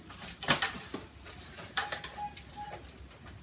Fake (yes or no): no